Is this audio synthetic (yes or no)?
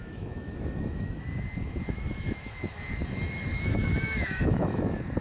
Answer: yes